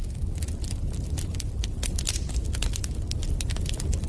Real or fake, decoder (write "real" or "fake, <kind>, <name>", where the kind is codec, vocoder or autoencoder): real